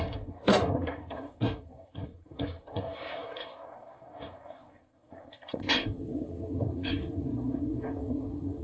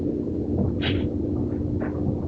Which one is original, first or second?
second